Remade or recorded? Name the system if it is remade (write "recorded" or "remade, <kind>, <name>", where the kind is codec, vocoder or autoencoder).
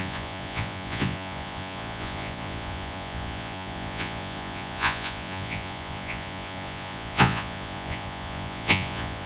remade, vocoder, Vocos